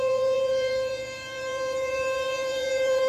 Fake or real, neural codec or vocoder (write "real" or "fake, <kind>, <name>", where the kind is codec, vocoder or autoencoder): fake, vocoder, Vocos